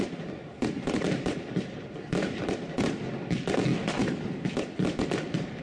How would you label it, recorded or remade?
recorded